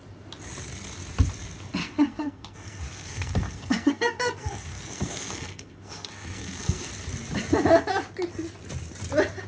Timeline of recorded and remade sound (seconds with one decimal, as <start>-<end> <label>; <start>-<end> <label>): 0.0-1.8 recorded; 1.8-6.9 remade; 6.9-9.5 recorded